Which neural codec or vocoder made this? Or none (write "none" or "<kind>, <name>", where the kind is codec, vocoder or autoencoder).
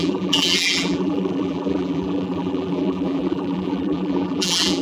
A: vocoder, BigVGAN v2